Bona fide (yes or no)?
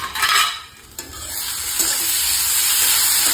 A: yes